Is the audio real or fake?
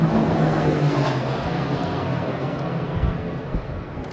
fake